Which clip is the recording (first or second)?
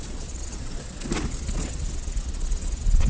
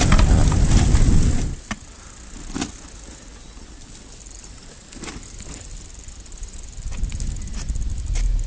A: second